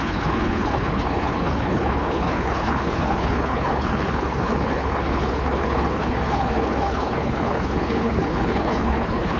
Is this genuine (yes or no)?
no